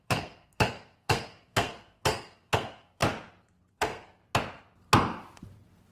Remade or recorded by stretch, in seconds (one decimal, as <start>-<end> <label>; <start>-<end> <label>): 0.0-3.0 remade; 3.0-3.7 recorded; 3.7-4.2 remade; 4.2-5.9 recorded